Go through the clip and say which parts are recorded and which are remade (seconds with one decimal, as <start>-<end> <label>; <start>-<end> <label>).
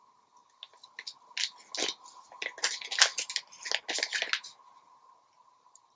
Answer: 0.0-6.0 recorded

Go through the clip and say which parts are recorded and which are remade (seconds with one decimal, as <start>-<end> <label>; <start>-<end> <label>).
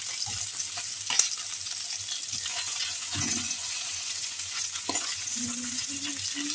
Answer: 0.0-2.5 recorded; 2.5-6.1 remade; 6.1-6.5 recorded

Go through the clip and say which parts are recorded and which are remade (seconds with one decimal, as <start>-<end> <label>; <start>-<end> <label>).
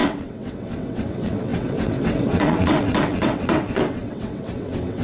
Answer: 0.0-5.0 remade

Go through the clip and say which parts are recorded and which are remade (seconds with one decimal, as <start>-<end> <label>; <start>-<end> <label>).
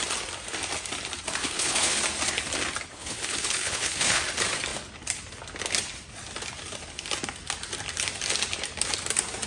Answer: 0.0-1.4 recorded; 1.4-2.0 remade; 2.0-2.9 recorded; 2.9-4.2 remade; 4.2-9.5 recorded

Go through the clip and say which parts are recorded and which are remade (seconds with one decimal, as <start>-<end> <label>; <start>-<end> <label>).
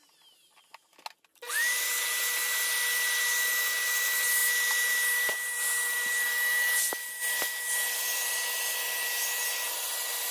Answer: 0.0-10.3 recorded